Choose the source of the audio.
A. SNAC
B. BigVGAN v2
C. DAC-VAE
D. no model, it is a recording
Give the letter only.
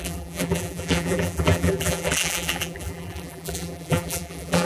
B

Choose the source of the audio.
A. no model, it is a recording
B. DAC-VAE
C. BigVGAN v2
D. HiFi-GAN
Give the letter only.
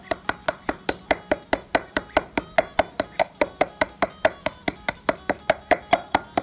A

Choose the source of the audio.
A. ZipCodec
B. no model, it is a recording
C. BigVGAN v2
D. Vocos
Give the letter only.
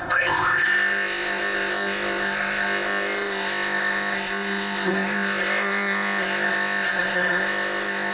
A